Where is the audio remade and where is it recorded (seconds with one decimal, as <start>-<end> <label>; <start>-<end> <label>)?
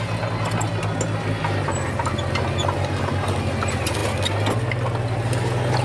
0.0-5.8 recorded